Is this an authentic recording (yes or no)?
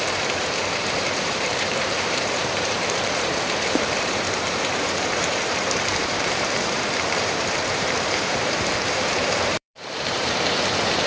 no